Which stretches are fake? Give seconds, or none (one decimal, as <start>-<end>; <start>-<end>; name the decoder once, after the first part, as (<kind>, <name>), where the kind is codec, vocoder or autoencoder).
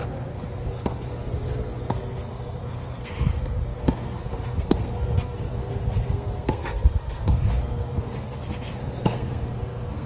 0.0-1.2 (codec, SNAC); 1.9-10.1